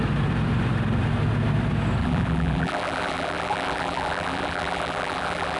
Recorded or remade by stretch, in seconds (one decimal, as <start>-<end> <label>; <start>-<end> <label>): 0.0-2.0 recorded; 2.0-5.6 remade